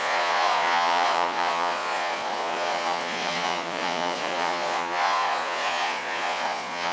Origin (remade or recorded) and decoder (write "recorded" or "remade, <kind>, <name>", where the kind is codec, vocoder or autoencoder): remade, vocoder, Vocos